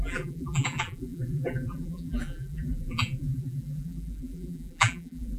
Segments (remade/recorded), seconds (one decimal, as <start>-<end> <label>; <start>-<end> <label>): 0.0-5.4 remade